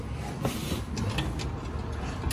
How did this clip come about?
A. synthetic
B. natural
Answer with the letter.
B